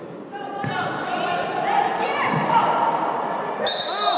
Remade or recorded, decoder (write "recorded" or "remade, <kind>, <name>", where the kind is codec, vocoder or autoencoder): recorded